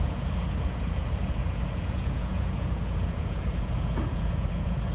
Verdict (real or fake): fake